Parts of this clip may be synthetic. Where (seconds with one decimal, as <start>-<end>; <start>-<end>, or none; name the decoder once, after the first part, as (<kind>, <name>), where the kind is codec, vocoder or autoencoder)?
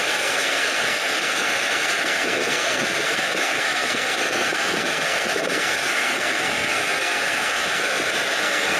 0.0-8.8 (codec, SNAC)